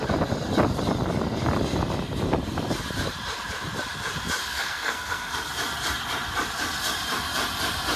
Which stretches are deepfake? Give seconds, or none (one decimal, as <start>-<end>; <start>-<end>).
4.5-5.5